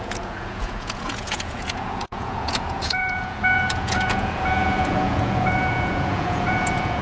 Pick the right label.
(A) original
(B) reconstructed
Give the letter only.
B